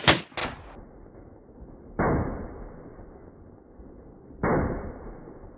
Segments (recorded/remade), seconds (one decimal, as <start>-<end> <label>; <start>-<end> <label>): 0.0-5.6 recorded

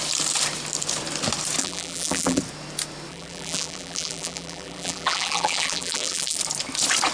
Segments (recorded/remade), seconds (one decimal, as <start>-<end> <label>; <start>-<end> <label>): 0.0-1.6 recorded; 1.6-2.4 remade; 2.4-3.1 recorded; 3.1-6.4 remade; 6.4-7.1 recorded

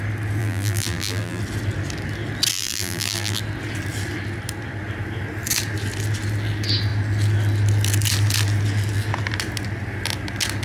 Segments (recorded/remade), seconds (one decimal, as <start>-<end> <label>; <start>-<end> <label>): 0.0-0.4 recorded; 0.4-1.4 remade; 1.4-2.5 recorded; 2.5-3.4 remade; 3.4-10.6 recorded

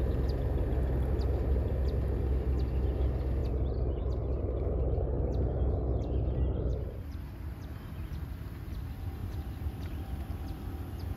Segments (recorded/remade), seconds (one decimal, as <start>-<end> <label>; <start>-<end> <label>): 0.0-6.7 recorded; 6.7-7.7 remade; 7.7-9.2 recorded; 9.2-10.0 remade; 10.0-11.2 recorded

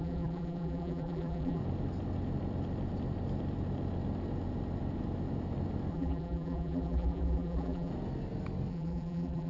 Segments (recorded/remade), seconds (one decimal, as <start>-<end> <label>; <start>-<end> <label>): 0.0-1.6 remade; 1.6-5.9 recorded; 5.9-7.9 remade; 7.9-8.7 recorded; 8.7-9.5 remade

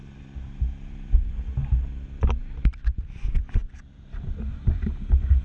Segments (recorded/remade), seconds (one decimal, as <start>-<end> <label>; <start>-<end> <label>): 0.0-1.3 remade; 1.3-2.4 recorded; 2.4-3.2 remade; 3.2-3.6 recorded; 3.6-5.4 remade